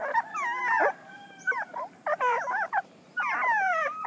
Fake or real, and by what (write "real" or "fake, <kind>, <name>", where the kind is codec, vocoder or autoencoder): fake, vocoder, BigVGAN v2